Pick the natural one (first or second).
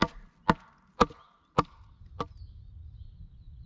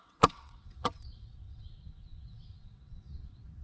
first